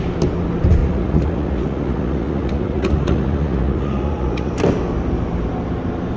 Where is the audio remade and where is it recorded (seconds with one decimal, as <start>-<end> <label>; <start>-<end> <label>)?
0.0-0.8 recorded; 0.8-4.5 remade; 4.5-6.2 recorded